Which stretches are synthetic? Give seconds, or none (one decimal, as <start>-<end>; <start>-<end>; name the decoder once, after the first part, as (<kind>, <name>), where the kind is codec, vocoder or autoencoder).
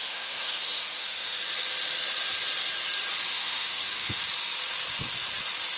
0.0-1.4 (autoencoder, DAC-VAE); 3.3-4.2